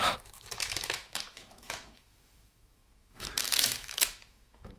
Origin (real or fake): fake